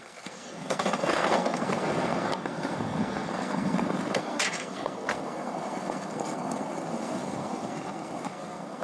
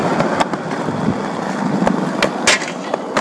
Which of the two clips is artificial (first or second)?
first